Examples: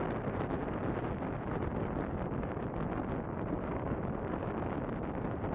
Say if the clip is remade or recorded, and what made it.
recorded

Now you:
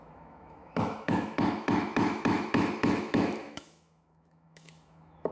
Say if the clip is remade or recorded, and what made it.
remade, autoencoder, DAC-VAE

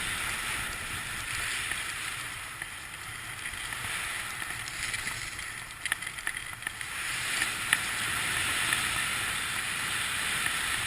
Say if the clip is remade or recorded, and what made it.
recorded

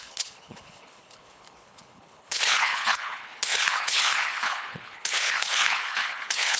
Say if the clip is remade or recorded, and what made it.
remade, codec, HILCodec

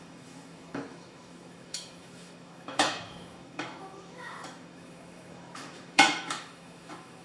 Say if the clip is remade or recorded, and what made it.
remade, autoencoder, DAC-VAE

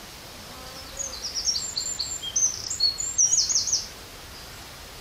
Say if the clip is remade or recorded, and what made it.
remade, vocoder, BigVGAN v2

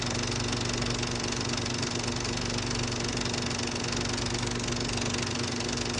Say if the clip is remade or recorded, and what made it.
recorded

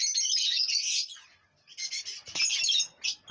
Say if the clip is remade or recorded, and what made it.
recorded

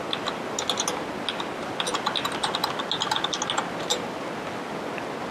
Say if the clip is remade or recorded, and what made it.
recorded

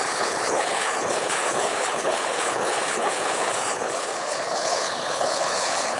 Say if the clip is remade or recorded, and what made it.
remade, codec, HILCodec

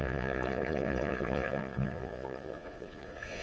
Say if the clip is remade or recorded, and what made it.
remade, vocoder, Vocos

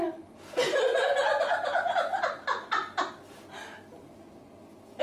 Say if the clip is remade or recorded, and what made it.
recorded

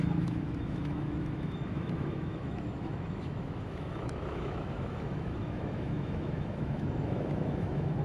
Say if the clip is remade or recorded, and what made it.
remade, autoencoder, DAC-VAE